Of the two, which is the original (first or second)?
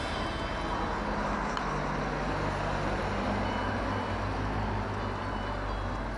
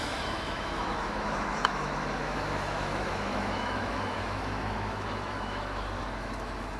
first